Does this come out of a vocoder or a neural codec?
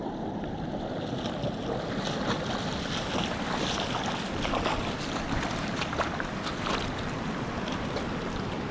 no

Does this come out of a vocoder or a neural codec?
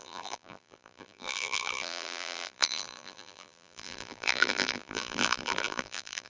yes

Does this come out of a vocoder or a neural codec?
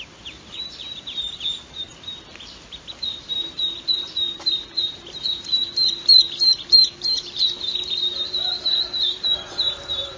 yes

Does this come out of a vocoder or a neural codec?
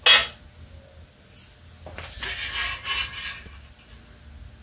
no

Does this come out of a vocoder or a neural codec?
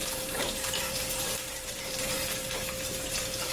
yes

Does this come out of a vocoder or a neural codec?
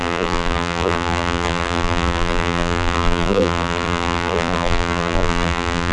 yes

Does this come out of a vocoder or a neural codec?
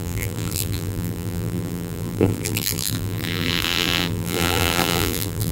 yes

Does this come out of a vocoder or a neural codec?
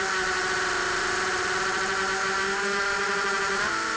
yes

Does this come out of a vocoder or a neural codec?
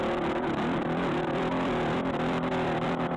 yes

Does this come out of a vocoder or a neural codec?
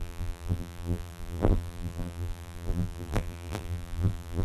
yes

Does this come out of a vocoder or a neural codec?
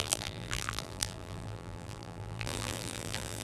yes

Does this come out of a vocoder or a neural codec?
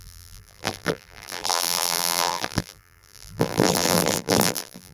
yes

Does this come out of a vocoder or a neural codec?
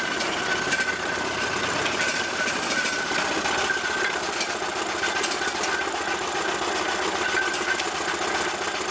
no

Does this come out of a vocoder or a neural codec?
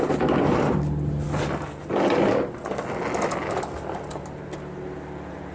no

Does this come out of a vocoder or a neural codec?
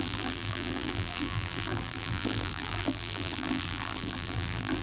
yes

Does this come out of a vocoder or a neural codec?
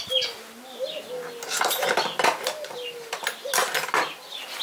no